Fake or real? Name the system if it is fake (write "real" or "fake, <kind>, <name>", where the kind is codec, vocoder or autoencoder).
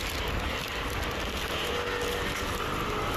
real